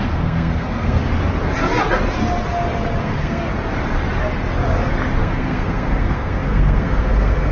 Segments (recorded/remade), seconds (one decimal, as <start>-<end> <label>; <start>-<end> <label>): 0.0-1.0 remade; 1.0-3.0 recorded; 3.0-3.5 remade; 3.5-5.2 recorded; 5.2-7.5 remade